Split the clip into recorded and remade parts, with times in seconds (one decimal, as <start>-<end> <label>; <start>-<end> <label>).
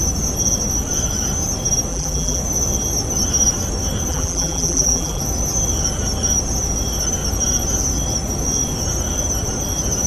0.0-1.9 recorded; 1.9-2.4 remade; 2.4-4.1 recorded; 4.1-5.2 remade; 5.2-10.1 recorded